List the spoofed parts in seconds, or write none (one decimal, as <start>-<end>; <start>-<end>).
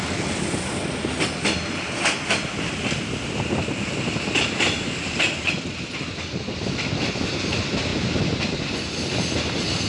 none